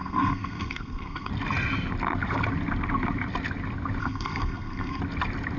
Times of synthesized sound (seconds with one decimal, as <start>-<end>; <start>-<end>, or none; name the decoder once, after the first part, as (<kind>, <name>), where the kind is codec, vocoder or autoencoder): 0.0-1.3 (codec, SNAC); 4.0-5.0